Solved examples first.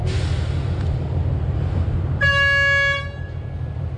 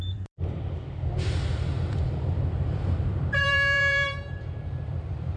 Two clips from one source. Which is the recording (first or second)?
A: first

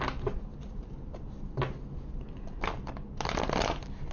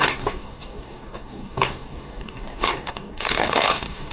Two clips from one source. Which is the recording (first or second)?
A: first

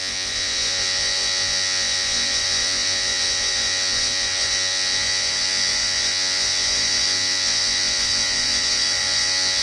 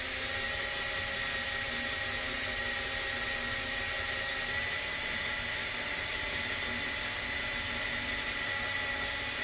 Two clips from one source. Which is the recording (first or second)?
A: second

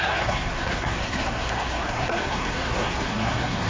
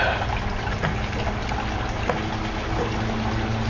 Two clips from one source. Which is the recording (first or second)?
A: second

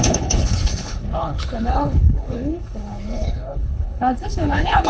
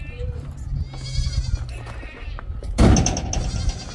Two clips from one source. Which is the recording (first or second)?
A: second